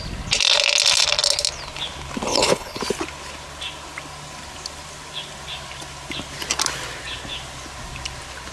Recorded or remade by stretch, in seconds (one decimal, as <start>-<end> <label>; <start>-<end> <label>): 0.0-2.3 recorded; 2.3-2.8 remade; 2.8-8.5 recorded